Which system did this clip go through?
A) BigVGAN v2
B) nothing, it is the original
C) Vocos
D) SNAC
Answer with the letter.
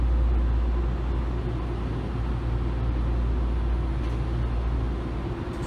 B